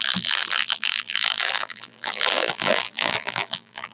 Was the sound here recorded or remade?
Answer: remade